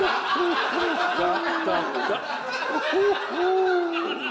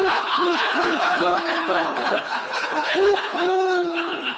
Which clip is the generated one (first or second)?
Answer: second